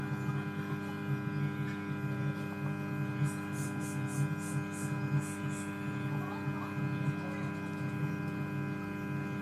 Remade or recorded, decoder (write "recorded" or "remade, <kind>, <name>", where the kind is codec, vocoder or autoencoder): recorded